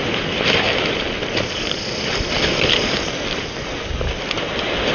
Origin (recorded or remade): recorded